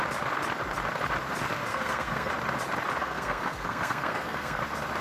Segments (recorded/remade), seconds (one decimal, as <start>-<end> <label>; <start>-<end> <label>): 0.0-1.7 recorded; 1.7-2.3 remade; 2.3-3.0 recorded; 3.0-4.6 remade; 4.6-5.0 recorded